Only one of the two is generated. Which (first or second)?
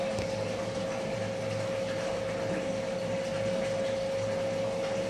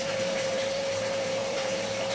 second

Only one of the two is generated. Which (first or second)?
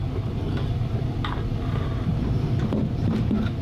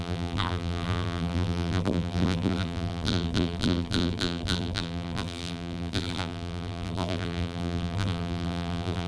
second